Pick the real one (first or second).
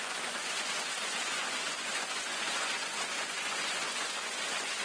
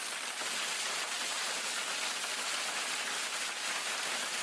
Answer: second